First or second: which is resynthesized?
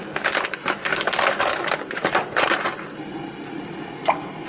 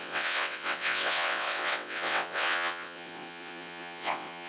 second